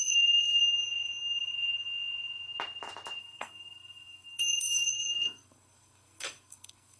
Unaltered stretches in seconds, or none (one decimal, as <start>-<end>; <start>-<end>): 0.6-3.2